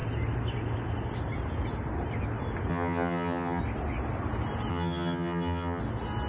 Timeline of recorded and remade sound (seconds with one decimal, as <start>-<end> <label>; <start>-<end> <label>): 0.0-2.7 recorded; 2.7-3.6 remade; 3.6-4.7 recorded; 4.7-5.8 remade; 5.8-6.3 recorded